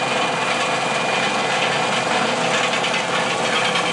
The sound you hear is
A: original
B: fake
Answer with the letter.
A